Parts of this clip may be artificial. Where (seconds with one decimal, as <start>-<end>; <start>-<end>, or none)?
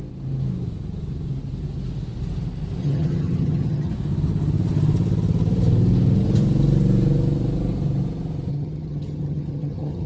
2.8-3.9; 8.5-10.1